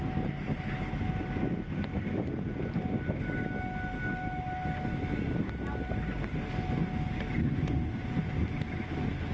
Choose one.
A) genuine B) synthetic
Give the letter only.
A